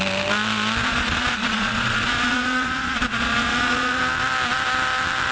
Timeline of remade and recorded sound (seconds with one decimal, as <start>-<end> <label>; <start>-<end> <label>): 0.0-0.8 recorded; 0.8-4.0 remade; 4.0-5.3 recorded